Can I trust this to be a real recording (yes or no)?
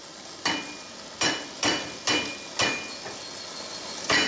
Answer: yes